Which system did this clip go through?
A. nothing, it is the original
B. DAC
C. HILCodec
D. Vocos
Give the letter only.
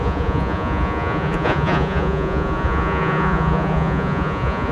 D